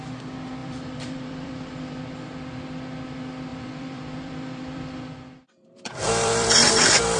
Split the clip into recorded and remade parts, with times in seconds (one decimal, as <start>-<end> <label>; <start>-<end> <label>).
0.0-0.6 recorded; 0.6-2.0 remade; 2.0-3.5 recorded; 3.5-7.2 remade